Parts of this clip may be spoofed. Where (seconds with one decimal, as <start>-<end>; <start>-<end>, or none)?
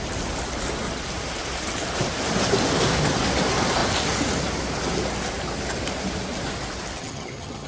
7.0-7.7